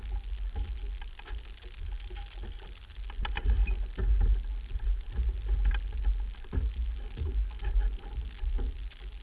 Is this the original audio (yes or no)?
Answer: yes